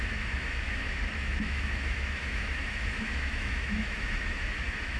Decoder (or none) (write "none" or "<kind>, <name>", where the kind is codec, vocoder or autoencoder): autoencoder, DAC-VAE